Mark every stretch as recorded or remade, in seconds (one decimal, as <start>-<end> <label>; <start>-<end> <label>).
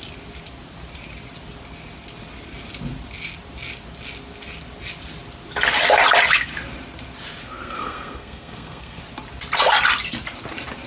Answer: 0.0-7.4 recorded; 7.4-9.0 remade; 9.0-10.9 recorded